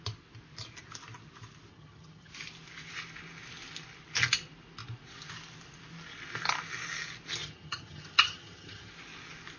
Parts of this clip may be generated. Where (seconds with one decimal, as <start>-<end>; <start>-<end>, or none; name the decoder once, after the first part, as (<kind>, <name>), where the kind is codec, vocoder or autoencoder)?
1.7-2.3 (vocoder, HiFi-GAN); 7.4-8.9